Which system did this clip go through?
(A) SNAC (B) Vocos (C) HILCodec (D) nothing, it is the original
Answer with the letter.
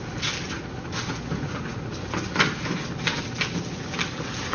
D